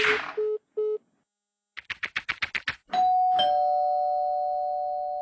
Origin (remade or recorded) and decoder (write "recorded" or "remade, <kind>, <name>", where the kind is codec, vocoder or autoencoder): recorded